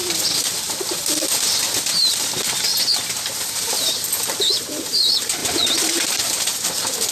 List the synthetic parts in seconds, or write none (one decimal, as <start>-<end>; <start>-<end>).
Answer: 0.0-2.3; 2.7-4.1; 5.4-7.1